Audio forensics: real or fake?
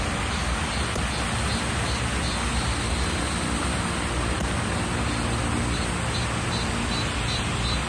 real